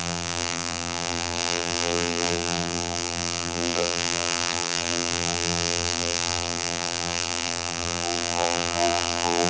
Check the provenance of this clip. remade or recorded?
remade